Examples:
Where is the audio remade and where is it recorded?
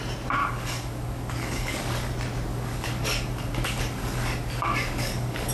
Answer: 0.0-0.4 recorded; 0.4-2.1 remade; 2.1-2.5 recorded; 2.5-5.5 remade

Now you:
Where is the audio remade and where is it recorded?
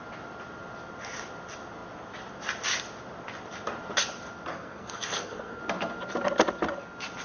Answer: 0.0-4.5 recorded; 4.5-5.6 remade; 5.6-7.2 recorded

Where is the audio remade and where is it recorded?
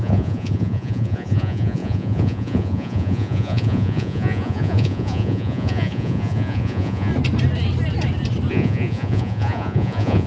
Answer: 0.0-7.1 remade; 7.1-8.5 recorded; 8.5-10.3 remade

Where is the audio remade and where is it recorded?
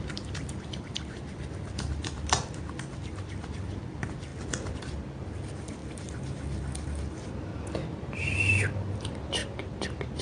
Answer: 0.0-4.3 remade; 4.3-4.8 recorded; 4.8-5.8 remade; 5.8-6.9 recorded; 6.9-10.2 remade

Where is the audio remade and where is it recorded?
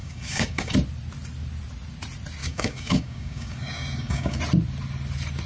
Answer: 0.0-0.7 remade; 0.7-2.4 recorded; 2.4-4.4 remade; 4.4-5.5 recorded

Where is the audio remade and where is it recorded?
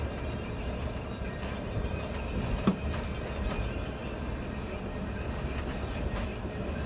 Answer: 0.0-6.9 recorded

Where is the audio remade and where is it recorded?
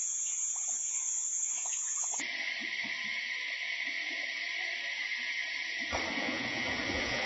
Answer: 0.0-2.1 remade; 2.1-6.1 recorded; 6.1-7.3 remade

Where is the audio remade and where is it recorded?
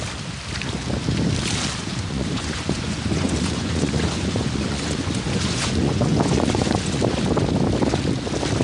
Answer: 0.0-1.8 recorded; 1.8-7.0 remade; 7.0-8.6 recorded